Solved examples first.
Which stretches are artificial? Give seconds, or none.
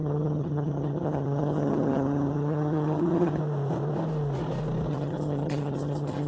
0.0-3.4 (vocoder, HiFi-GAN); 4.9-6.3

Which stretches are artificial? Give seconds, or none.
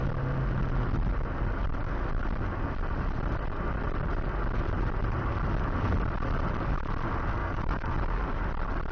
7.4-8.4 (codec, DAC)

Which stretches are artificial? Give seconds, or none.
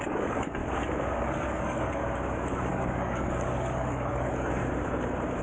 0.0-0.6 (codec, DAC); 1.2-2.0; 2.7-4.6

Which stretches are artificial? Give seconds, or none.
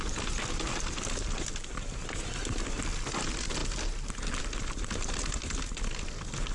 none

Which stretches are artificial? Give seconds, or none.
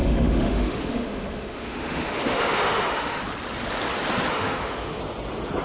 0.0-3.2 (autoencoder, DAC-VAE); 4.3-5.0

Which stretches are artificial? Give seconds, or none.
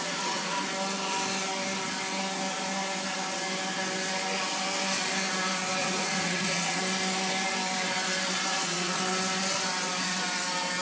0.0-0.7 (vocoder, Vocos); 5.8-6.8; 8.5-9.0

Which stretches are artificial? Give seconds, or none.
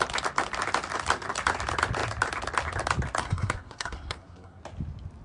3.2-4.6 (codec, SNAC)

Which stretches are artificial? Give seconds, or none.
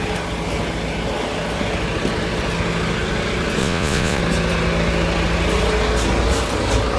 3.6-4.2 (vocoder, Vocos)